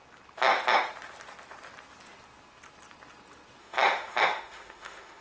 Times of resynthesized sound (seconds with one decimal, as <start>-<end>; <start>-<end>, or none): 3.6-5.2